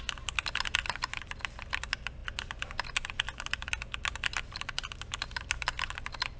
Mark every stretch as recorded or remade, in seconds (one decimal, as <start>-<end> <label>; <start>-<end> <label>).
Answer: 0.0-6.4 recorded